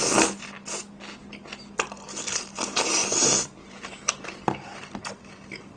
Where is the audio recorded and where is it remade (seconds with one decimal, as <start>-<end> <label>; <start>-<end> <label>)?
0.0-5.8 recorded